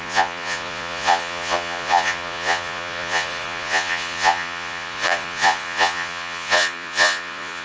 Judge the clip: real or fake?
fake